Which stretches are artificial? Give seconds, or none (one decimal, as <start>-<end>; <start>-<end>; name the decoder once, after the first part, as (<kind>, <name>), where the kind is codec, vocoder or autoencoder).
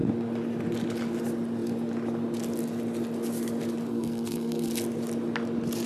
3.9-4.7 (codec, SNAC)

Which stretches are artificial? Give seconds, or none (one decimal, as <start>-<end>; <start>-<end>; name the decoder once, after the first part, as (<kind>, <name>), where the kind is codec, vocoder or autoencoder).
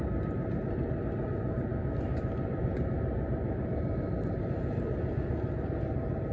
none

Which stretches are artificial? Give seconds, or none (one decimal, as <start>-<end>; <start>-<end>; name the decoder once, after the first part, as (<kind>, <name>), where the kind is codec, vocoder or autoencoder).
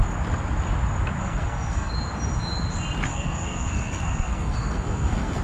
1.2-1.9 (codec, SNAC); 3.1-5.4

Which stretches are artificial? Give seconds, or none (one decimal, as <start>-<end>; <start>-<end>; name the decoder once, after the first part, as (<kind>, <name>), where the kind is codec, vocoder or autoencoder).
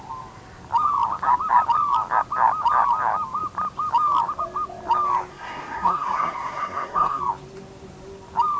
5.3-7.2 (codec, SNAC)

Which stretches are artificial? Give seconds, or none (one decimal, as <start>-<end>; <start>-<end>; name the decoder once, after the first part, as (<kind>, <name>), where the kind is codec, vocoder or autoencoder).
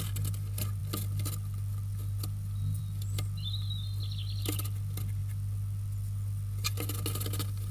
none